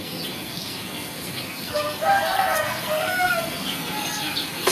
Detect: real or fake fake